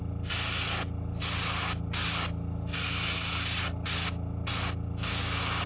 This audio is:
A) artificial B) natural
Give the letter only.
B